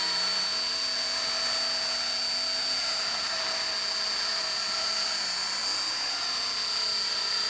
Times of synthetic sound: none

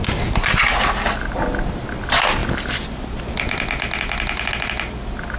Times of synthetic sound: none

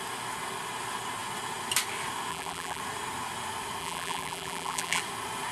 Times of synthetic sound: 2.3-2.8 (vocoder, BigVGAN v2); 3.8-5.0

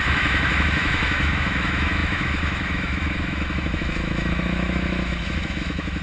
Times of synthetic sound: 0.0-6.0 (autoencoder, DAC-VAE)

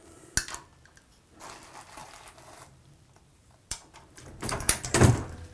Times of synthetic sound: 2.0-5.1 (vocoder, BigVGAN v2)

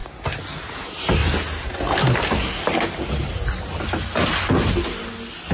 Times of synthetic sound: none

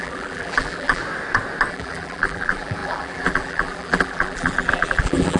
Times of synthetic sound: 0.0-1.0 (vocoder, BigVGAN v2); 1.7-5.4